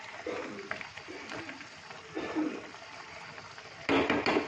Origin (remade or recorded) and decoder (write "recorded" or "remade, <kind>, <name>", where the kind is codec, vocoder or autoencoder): remade, vocoder, BigVGAN v2